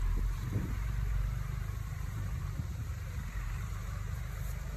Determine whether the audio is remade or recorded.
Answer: remade